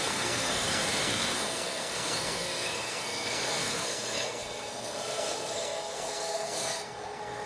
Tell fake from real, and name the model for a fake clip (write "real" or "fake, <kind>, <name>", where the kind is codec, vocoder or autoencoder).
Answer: fake, codec, SNAC